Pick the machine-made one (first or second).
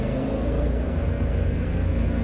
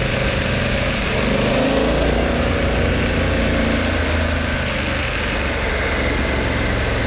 first